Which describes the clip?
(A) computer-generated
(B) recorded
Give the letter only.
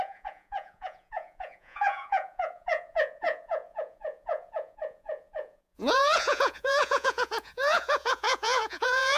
A